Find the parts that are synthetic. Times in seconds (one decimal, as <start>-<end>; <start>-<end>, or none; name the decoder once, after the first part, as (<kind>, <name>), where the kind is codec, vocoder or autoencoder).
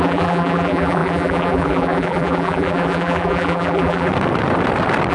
0.0-4.1 (vocoder, BigVGAN v2)